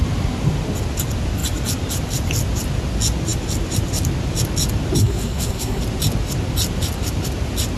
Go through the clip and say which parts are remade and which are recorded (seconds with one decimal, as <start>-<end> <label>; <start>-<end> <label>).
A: 0.0-5.0 recorded; 5.0-5.8 remade; 5.8-7.8 recorded